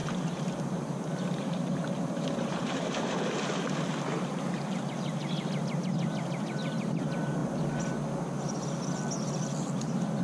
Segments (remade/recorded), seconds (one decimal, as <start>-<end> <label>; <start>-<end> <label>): 0.0-3.1 remade; 3.1-10.2 recorded